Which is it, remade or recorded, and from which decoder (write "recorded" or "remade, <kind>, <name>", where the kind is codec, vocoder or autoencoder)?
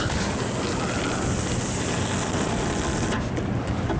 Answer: recorded